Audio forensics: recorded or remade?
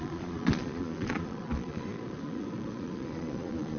remade